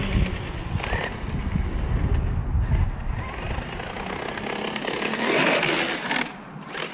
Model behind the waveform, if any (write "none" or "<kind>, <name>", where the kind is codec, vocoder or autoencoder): none